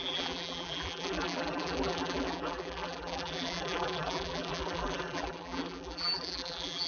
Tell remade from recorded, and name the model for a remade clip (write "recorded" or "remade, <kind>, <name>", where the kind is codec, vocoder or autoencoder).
remade, vocoder, BigVGAN v2